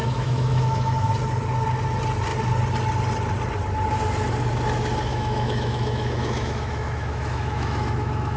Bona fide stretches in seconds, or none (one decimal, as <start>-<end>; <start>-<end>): 1.1-5.1